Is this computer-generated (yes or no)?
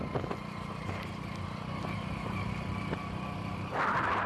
no